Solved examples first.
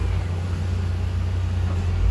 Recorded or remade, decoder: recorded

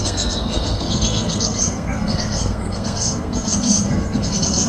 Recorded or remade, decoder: remade, codec, SNAC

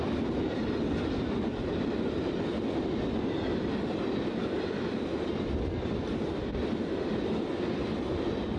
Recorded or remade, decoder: recorded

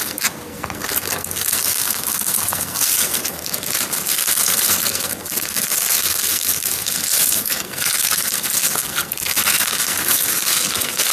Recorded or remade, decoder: remade, codec, SNAC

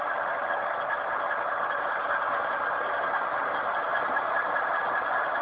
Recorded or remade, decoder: recorded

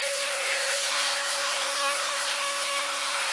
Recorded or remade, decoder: remade, codec, SNAC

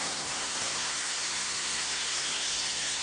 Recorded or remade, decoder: remade, codec, SNAC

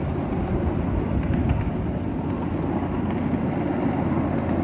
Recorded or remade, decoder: recorded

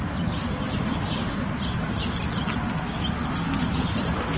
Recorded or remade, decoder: recorded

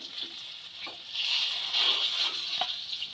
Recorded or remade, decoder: recorded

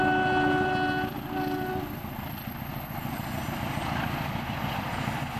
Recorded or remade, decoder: recorded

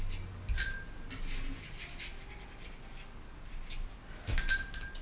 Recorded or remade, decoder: recorded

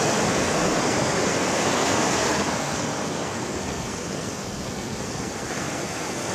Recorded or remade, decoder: remade, codec, SNAC